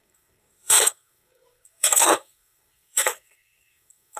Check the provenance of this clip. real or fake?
fake